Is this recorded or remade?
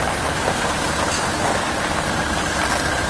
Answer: recorded